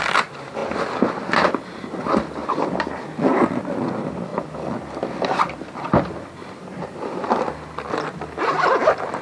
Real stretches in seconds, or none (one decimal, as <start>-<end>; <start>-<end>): 0.0-9.2